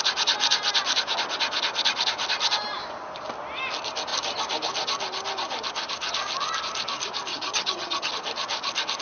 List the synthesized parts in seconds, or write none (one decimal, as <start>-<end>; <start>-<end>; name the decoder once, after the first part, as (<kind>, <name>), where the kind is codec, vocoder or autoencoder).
7.3-8.1 (vocoder, HiFi-GAN)